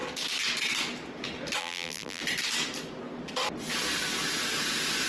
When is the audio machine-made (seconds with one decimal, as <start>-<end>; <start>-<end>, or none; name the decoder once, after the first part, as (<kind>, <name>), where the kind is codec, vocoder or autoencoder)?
1.6-2.2 (vocoder, BigVGAN v2)